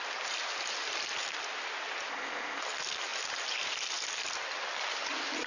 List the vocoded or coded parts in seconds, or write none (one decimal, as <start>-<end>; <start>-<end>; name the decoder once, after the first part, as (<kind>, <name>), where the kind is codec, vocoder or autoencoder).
2.1-2.6 (codec, ZipCodec)